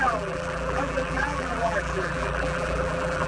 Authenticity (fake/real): fake